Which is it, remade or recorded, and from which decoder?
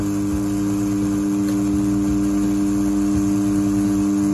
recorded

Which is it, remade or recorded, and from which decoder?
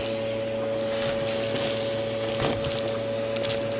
recorded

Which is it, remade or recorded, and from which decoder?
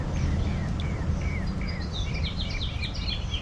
recorded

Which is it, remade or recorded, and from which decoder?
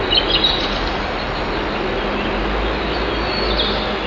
recorded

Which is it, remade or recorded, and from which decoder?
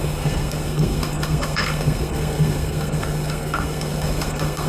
remade, codec, SNAC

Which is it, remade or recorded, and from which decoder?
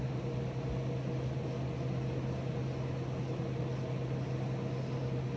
recorded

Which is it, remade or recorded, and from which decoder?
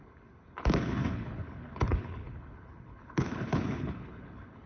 remade, codec, HILCodec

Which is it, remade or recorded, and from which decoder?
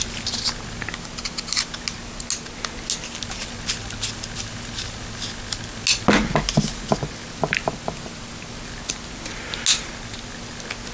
recorded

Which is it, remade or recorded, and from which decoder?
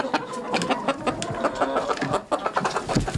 recorded